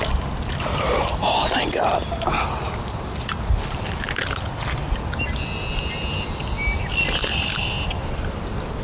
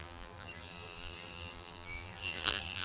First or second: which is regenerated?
second